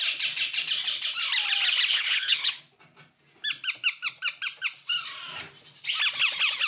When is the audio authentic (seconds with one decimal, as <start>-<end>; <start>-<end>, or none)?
0.0-1.9; 2.6-6.7